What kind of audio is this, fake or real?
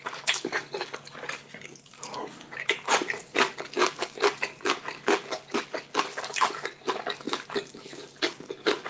fake